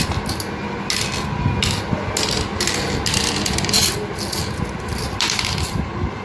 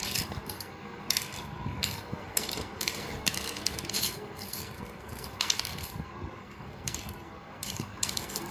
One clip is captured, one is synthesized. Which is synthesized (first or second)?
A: second